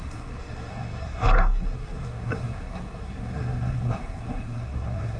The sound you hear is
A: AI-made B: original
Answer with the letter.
A